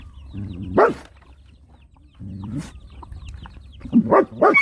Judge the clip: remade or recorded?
remade